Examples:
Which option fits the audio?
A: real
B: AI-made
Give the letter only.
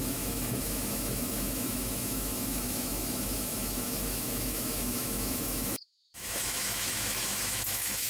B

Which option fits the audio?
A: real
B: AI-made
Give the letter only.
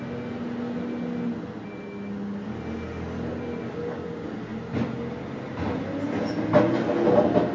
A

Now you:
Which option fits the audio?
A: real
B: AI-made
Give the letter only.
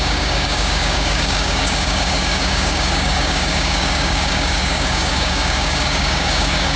B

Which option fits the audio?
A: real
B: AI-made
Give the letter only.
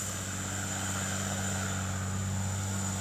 A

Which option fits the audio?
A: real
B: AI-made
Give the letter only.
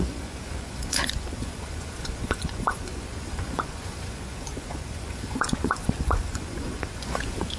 B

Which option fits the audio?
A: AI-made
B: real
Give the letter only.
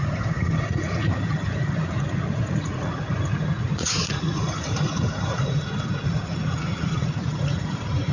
A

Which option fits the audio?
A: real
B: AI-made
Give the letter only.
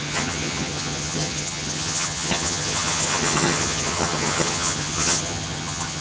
B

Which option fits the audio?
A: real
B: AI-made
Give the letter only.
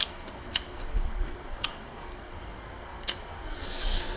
B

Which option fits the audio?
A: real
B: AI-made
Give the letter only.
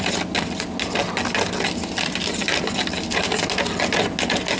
A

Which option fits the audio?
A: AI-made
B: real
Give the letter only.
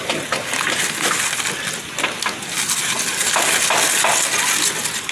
B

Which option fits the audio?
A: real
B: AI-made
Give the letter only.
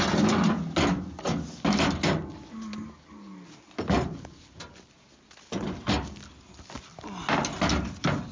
A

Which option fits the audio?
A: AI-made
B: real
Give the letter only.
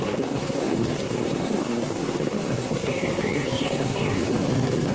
A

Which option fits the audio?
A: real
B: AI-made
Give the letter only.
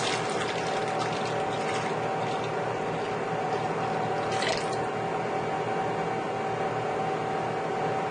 A